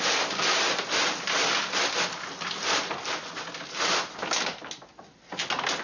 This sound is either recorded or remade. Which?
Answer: recorded